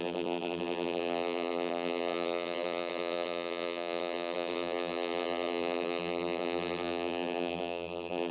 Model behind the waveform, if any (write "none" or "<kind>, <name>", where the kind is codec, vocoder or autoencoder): vocoder, BigVGAN v2